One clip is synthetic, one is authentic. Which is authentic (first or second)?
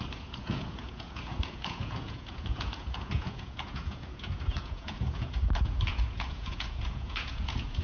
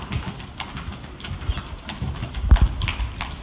second